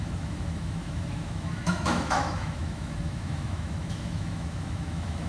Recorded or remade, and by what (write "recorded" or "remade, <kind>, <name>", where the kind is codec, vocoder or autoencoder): remade, autoencoder, DAC-VAE